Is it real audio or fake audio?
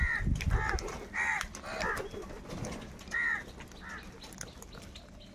real